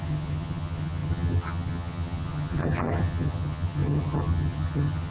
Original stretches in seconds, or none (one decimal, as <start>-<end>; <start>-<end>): none